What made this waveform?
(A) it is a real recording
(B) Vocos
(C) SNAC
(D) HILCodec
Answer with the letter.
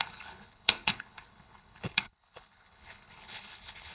D